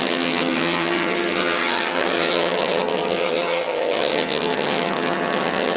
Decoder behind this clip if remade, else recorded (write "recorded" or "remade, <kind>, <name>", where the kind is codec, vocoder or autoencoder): remade, vocoder, HiFi-GAN